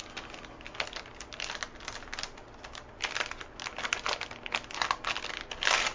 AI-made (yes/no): no